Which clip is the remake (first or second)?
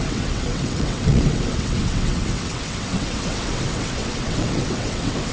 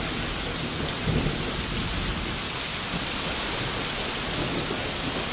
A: first